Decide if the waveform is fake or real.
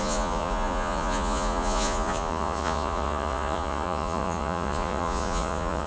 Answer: fake